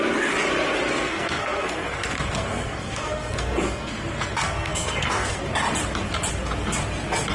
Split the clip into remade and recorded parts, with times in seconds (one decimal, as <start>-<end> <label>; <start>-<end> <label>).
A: 0.0-1.0 recorded; 1.0-5.4 remade; 5.4-7.3 recorded